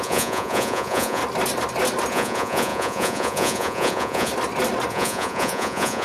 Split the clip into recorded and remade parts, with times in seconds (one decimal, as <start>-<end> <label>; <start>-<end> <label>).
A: 0.0-1.2 remade; 1.2-2.1 recorded; 2.1-4.3 remade; 4.3-4.9 recorded; 4.9-6.0 remade